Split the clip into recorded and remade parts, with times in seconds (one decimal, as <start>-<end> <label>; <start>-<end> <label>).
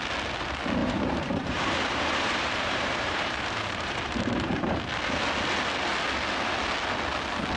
0.0-0.8 recorded; 0.8-4.8 remade; 4.8-7.6 recorded